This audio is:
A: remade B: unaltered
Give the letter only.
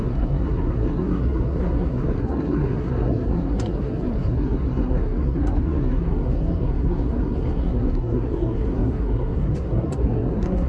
A